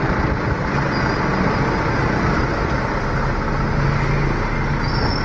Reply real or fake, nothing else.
real